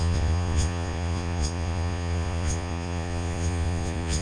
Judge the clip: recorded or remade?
remade